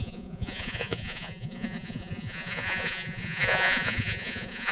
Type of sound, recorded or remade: remade